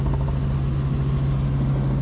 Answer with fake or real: real